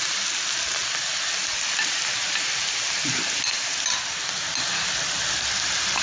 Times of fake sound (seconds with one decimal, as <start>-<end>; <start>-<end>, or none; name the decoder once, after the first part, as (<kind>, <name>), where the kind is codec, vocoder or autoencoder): none